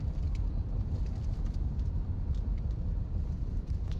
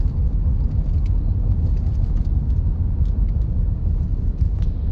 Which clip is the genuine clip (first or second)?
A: second